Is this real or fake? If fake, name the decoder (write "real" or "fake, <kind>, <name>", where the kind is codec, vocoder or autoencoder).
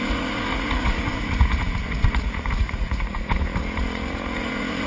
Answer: fake, vocoder, Vocos